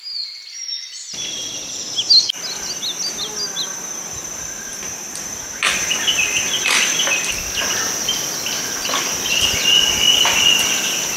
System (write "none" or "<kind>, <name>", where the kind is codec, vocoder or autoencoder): none